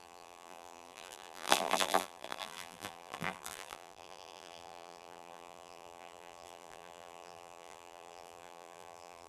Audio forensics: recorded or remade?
remade